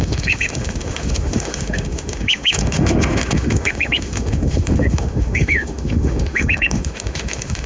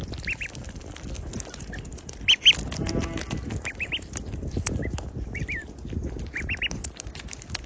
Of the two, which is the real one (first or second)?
second